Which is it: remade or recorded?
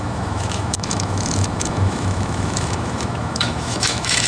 remade